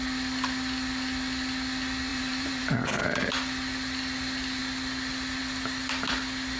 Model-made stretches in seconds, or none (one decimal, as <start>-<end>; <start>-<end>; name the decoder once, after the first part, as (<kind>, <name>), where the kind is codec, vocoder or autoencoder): 2.1-2.7 (vocoder, BigVGAN v2)